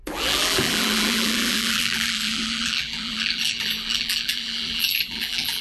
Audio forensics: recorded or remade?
remade